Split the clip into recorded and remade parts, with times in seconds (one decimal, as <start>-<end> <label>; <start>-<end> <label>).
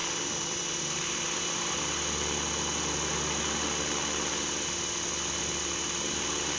0.0-6.6 recorded